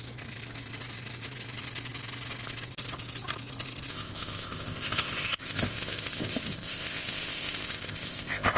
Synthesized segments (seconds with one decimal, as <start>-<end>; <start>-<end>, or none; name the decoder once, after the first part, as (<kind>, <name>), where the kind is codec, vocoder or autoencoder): 3.9-8.6 (codec, ZipCodec)